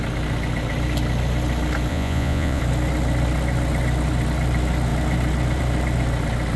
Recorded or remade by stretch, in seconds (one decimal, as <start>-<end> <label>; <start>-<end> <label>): 0.0-1.9 recorded; 1.9-2.6 remade; 2.6-6.6 recorded